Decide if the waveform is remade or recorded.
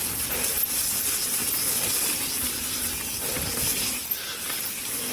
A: recorded